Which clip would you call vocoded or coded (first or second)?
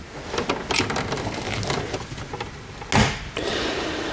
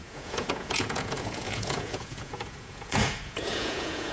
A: second